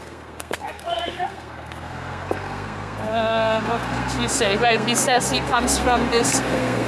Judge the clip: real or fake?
fake